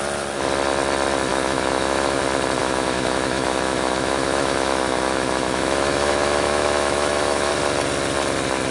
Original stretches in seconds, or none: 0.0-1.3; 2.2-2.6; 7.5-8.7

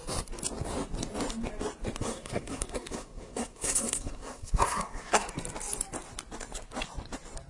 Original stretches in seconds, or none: 0.0-2.0; 5.3-7.5